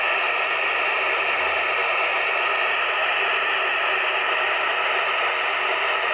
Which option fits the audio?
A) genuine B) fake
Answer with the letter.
A